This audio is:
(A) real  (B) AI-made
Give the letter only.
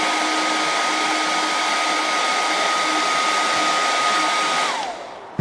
A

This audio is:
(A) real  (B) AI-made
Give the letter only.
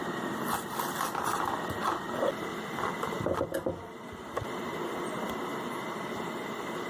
A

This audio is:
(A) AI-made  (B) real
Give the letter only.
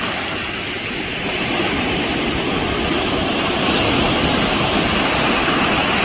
B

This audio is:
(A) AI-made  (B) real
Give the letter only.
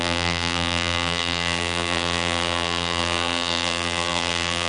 A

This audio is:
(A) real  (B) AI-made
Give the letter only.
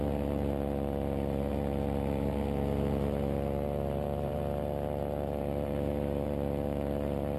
B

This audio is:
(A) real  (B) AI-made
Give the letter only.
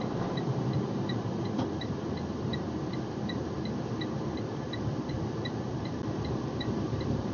B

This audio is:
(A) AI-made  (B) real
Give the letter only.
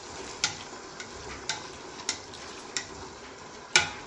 B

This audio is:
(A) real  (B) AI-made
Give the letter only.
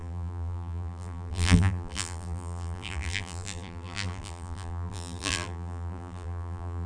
B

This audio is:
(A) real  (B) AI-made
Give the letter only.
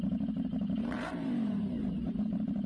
B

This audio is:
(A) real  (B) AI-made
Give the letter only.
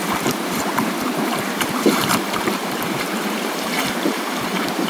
B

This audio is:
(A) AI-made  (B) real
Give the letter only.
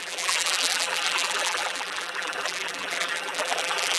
A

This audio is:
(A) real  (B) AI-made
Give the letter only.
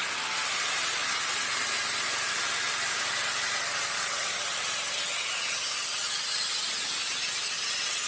A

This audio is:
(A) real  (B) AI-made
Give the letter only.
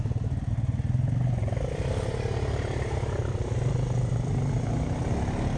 A